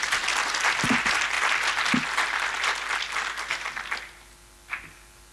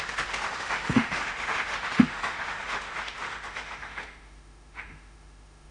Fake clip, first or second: second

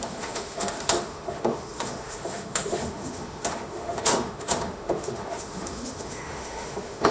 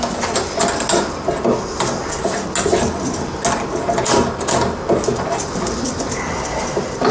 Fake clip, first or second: first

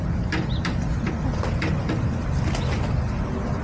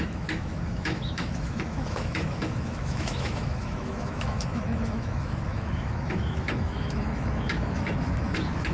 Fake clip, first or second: second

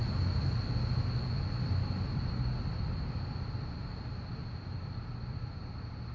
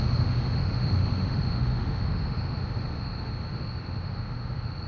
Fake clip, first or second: second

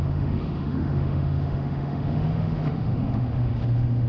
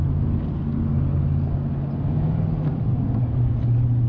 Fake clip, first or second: first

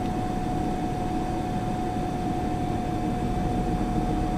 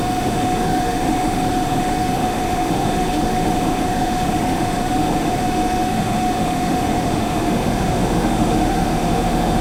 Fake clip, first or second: second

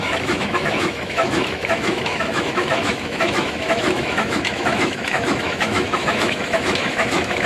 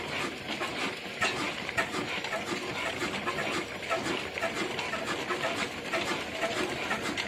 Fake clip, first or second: first